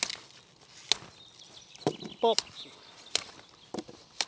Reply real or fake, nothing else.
real